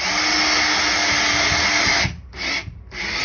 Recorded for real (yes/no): yes